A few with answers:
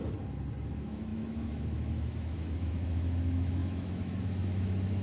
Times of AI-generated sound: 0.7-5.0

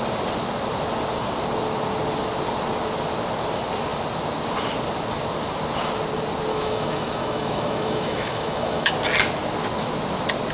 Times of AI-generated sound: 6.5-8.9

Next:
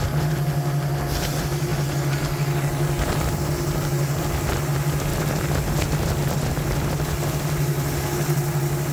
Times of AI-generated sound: none